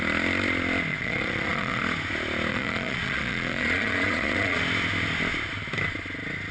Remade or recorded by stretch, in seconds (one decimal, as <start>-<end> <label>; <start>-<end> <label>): 0.0-0.9 recorded; 0.9-1.8 remade; 1.8-2.5 recorded; 2.5-4.6 remade; 4.6-6.5 recorded